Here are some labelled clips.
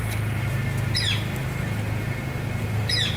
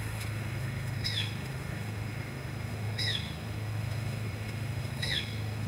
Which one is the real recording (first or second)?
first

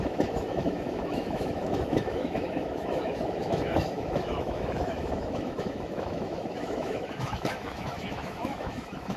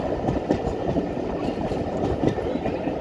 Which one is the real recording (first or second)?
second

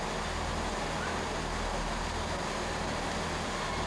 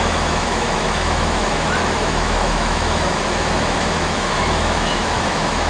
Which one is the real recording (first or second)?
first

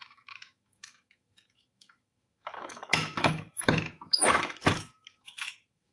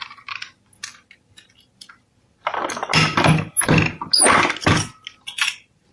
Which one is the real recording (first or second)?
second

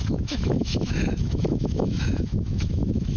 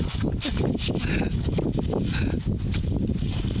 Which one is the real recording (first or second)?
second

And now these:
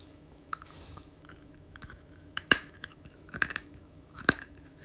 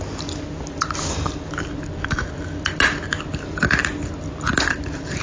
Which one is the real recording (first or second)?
second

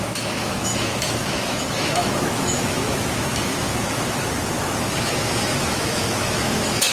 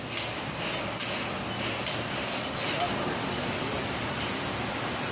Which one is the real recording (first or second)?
second